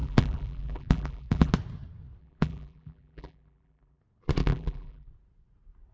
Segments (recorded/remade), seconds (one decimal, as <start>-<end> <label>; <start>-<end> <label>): 0.0-1.5 remade; 1.5-2.2 recorded; 2.2-4.0 remade; 4.0-4.4 recorded; 4.4-5.1 remade; 5.1-5.9 recorded